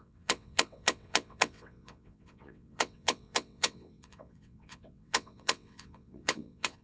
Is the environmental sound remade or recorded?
remade